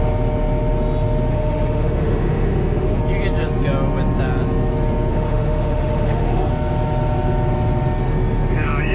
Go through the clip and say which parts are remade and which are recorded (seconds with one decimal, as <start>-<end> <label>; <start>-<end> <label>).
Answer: 0.0-1.3 recorded; 1.3-3.0 remade; 3.0-5.1 recorded; 5.1-6.5 remade; 6.5-8.9 recorded